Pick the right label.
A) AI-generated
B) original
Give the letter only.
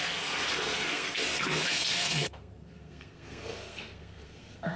A